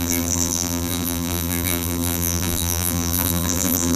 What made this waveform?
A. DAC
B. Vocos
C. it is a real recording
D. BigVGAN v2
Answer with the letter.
D